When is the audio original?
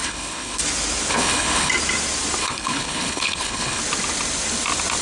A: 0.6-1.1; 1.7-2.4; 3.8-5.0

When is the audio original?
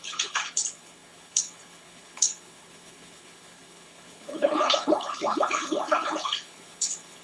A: none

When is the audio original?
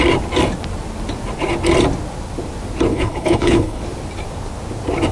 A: 0.0-2.9; 3.8-5.1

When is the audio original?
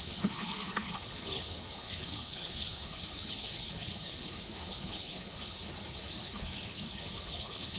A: none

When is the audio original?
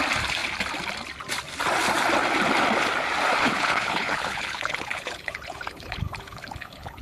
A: 0.0-3.4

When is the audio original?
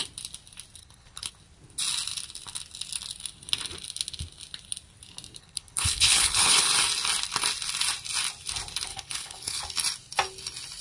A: 0.0-0.8; 1.3-5.4; 6.7-8.9; 9.6-10.8